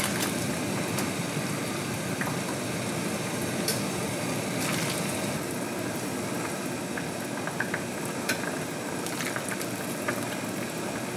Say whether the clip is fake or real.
real